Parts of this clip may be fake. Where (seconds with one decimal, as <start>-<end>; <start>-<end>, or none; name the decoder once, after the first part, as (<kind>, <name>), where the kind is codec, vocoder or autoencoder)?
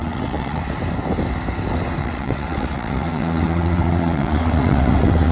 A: 0.0-0.6 (vocoder, WaveNeXt); 2.0-5.3